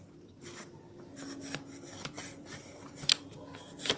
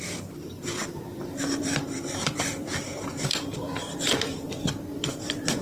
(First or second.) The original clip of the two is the first